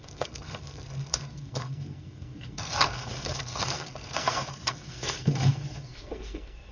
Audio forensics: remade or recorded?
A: remade